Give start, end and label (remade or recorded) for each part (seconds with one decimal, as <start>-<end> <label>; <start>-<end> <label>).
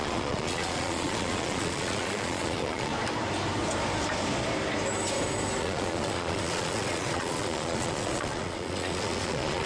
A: 0.0-2.9 remade; 2.9-5.6 recorded; 5.6-9.7 remade